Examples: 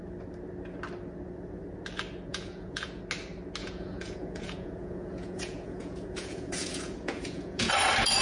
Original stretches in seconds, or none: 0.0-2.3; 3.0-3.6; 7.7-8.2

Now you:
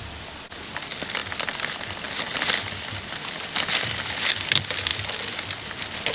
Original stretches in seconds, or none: 0.0-6.1

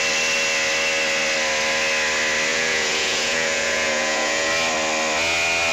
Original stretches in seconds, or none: 0.0-2.5; 4.5-5.7

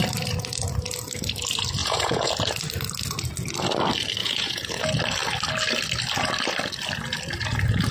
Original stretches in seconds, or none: 0.0-1.8; 2.3-4.2; 4.8-7.9

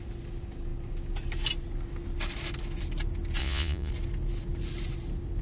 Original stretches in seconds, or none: 0.0-3.4; 3.9-5.4